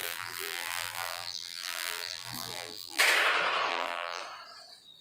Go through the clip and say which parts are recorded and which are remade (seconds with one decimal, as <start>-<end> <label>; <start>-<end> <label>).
0.0-3.0 remade; 3.0-3.7 recorded; 3.7-4.2 remade; 4.2-5.0 recorded